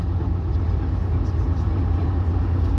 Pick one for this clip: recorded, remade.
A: recorded